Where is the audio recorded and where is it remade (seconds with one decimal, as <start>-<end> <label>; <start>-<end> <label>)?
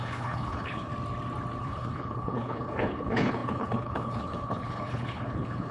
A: 0.0-0.9 remade; 0.9-1.6 recorded; 1.6-5.7 remade